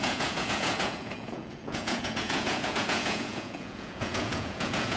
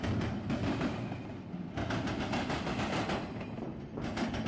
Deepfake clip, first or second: first